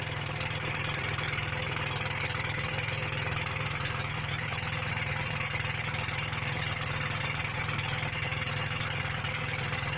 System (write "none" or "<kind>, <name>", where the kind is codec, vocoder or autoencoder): vocoder, BigVGAN v2